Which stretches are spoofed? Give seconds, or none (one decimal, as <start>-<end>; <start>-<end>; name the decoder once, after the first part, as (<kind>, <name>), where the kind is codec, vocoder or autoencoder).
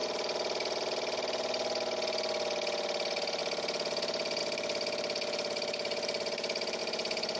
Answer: none